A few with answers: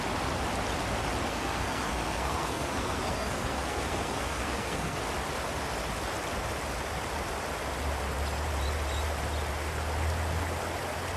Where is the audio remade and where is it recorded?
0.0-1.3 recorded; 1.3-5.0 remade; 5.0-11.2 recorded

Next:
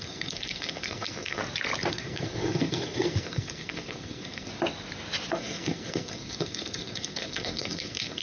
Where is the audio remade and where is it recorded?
0.0-1.4 remade; 1.4-1.9 recorded; 1.9-4.5 remade; 4.5-5.3 recorded; 5.3-8.2 remade

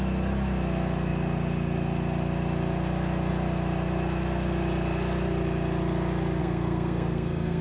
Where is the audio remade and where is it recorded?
0.0-6.4 recorded; 6.4-7.6 remade